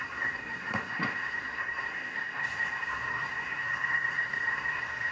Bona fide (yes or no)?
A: no